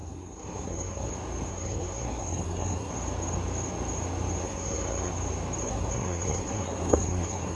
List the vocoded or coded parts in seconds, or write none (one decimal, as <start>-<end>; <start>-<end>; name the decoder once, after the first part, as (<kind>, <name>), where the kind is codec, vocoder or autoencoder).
0.0-1.1 (codec, SNAC); 1.5-2.9; 4.4-5.1; 5.6-7.6